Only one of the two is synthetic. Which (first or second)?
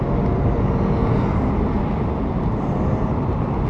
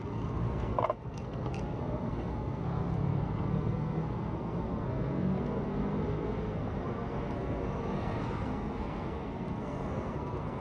second